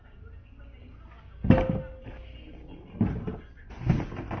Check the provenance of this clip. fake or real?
real